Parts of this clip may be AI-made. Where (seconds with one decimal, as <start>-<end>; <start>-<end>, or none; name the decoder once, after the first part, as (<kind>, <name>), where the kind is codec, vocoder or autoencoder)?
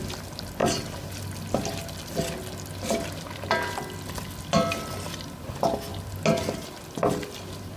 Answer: none